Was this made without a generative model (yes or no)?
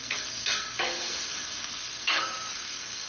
no